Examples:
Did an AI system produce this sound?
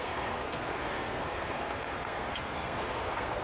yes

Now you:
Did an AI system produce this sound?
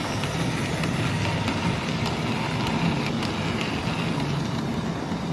no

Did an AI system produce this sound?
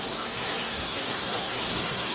yes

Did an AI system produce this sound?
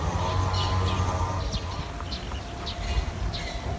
no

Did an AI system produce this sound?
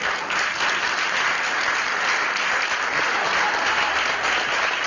no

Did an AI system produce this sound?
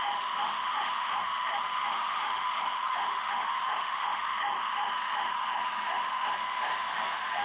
yes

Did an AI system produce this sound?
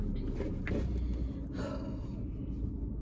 no